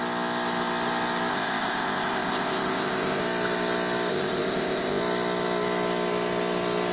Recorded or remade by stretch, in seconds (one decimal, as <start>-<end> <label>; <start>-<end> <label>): 0.0-1.3 recorded; 1.3-3.2 remade; 3.2-4.1 recorded; 4.1-5.0 remade; 5.0-6.9 recorded